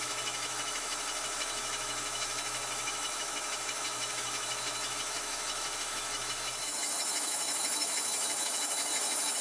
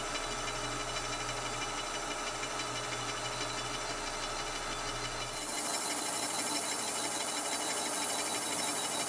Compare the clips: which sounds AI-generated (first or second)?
first